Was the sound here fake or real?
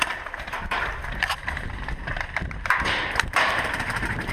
fake